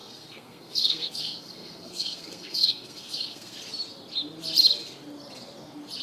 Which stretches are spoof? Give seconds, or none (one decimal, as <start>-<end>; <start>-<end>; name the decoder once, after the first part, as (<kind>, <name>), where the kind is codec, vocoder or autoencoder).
0.0-3.6 (codec, SNAC)